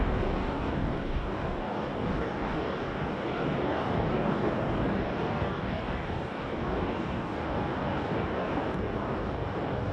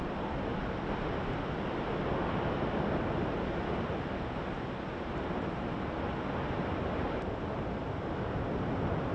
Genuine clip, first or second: second